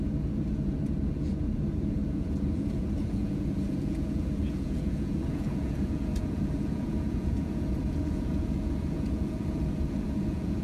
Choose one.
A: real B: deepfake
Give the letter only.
B